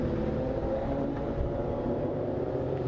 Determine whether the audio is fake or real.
fake